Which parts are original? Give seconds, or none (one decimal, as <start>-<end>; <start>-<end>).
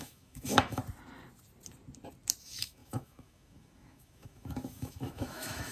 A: 0.8-2.4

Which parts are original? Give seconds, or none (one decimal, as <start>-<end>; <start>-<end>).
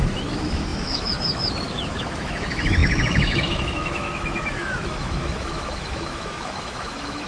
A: none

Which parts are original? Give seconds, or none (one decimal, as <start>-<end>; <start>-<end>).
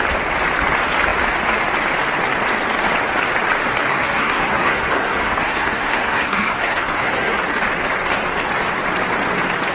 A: 0.0-3.9; 7.4-9.7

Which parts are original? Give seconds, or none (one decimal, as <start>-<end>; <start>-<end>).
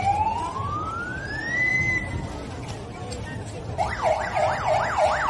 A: 0.0-5.3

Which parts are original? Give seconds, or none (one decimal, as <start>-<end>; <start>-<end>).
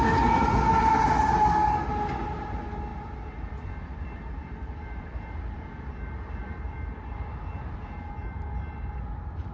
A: 0.0-2.9; 8.1-9.5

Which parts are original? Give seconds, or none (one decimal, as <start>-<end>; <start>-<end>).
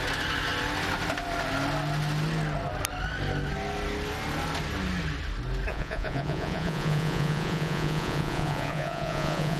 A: 0.0-5.7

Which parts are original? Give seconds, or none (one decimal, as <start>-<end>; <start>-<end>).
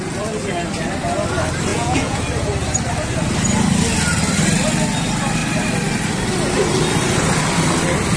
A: 0.0-1.7; 2.2-8.2